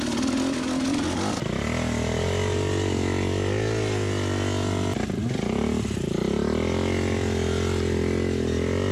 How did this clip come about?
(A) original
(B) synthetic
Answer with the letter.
A